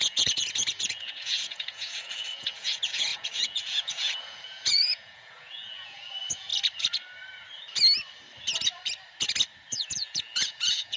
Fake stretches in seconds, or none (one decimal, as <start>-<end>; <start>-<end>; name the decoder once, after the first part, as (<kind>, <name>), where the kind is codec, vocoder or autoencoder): 0.0-6.5 (vocoder, Vocos); 9.7-11.0